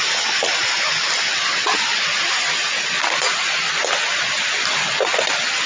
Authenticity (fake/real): real